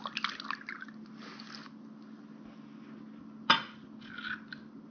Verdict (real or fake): real